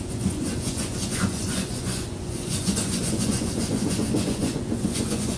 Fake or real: fake